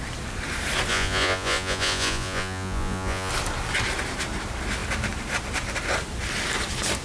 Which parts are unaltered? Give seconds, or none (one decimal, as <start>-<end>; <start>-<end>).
0.0-0.9; 3.3-7.0